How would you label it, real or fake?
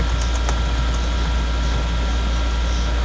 real